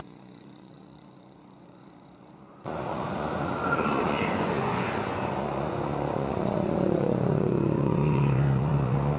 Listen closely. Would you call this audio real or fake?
fake